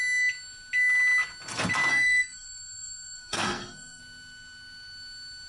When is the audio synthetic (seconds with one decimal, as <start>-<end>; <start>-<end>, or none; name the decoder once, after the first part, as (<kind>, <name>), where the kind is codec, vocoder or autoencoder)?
1.9-4.0 (codec, SNAC)